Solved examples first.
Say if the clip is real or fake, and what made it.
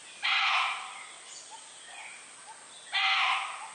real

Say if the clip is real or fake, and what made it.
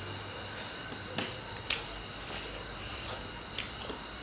real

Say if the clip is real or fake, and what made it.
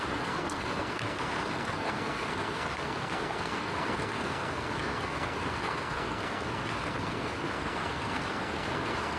fake, codec, SNAC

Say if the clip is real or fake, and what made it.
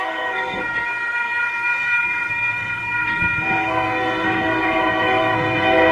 fake, codec, SNAC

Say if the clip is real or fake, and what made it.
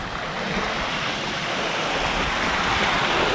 real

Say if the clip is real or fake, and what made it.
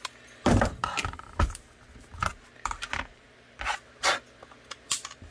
real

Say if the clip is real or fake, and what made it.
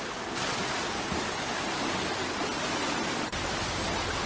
real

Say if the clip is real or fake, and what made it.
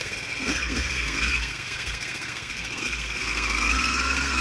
fake, codec, SNAC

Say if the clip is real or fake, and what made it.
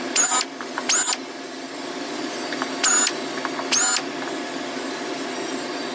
real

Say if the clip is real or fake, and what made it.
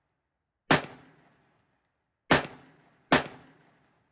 real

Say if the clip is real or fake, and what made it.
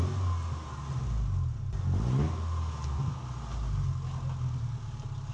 real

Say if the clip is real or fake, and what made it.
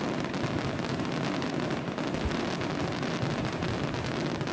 real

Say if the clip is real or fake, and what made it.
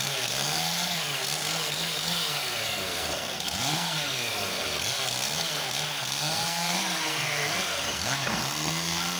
fake, codec, SNAC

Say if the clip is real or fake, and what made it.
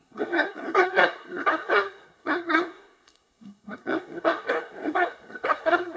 fake, codec, SNAC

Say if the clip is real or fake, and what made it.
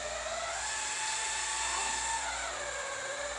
real